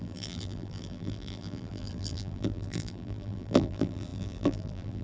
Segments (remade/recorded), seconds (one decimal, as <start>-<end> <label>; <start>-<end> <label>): 0.0-5.0 remade